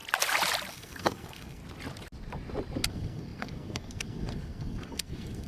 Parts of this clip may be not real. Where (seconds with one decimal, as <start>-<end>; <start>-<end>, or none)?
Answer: 0.7-1.6; 2.9-5.5